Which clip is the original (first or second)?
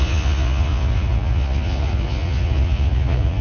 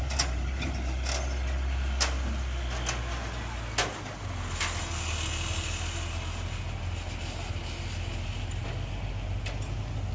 second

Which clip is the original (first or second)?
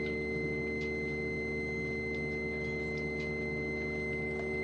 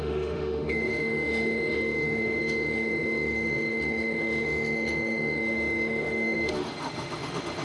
first